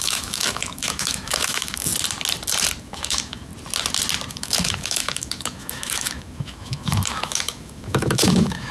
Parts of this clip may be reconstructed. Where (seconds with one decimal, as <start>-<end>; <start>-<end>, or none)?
0.0-1.9; 2.8-3.5; 4.3-8.7